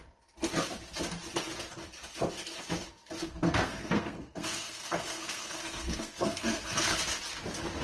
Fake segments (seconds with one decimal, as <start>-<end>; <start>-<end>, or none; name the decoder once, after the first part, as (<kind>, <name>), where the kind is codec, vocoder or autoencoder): 3.2-7.0 (codec, SNAC)